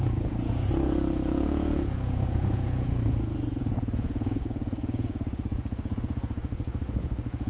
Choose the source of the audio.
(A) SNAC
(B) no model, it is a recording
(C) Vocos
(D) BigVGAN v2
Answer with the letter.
C